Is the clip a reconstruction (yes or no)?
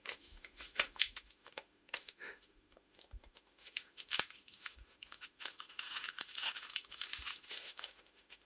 yes